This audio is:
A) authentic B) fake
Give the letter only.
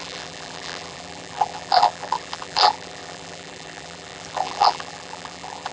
B